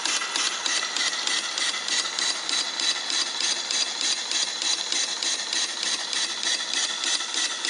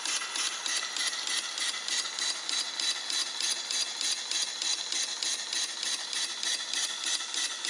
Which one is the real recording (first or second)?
second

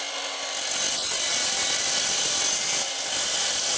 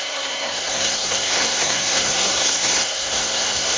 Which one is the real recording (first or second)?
first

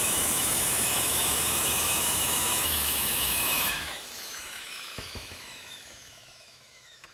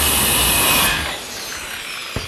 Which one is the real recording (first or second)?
second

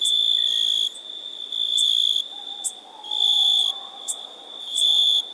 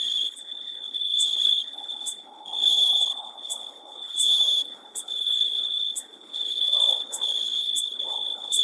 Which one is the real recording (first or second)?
first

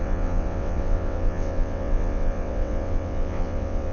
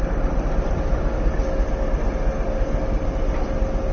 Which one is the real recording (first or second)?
second